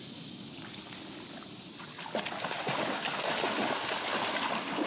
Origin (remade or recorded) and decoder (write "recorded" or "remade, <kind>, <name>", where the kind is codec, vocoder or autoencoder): recorded